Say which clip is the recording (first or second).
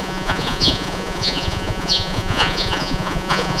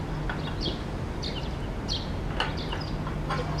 second